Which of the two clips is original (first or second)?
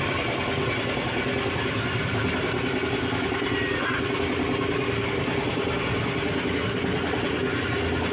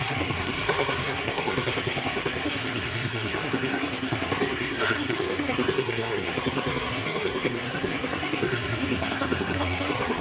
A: first